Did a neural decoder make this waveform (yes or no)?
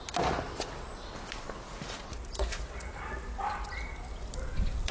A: no